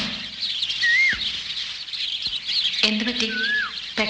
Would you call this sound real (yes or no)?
yes